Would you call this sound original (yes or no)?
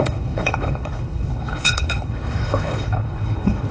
no